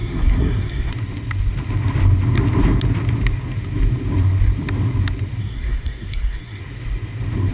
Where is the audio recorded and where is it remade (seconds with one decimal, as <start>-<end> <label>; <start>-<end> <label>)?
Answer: 0.0-0.9 remade; 0.9-5.4 recorded; 5.4-6.6 remade; 6.6-7.5 recorded